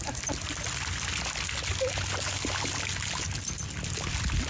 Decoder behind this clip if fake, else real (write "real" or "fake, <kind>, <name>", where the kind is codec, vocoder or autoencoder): real